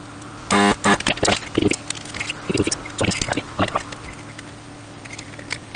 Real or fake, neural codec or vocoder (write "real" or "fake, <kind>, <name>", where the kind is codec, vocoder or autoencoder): real